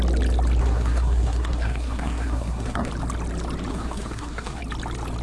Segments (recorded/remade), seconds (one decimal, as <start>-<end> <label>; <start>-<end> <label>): 0.0-0.6 recorded; 0.6-2.9 remade; 2.9-3.7 recorded; 3.7-4.6 remade; 4.6-5.2 recorded